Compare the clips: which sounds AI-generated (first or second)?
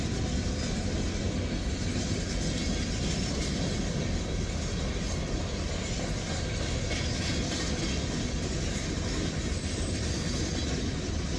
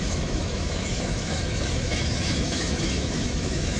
second